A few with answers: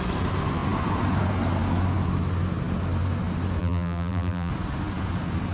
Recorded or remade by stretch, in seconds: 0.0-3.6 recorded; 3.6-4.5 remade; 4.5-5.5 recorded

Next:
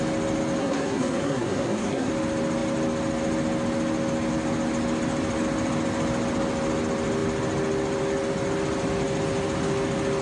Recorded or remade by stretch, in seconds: 0.0-0.6 recorded; 0.6-2.1 remade; 2.1-10.2 recorded

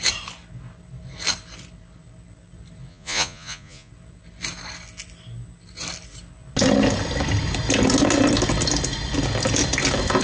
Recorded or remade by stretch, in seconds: 0.0-2.9 recorded; 2.9-3.9 remade; 3.9-10.2 recorded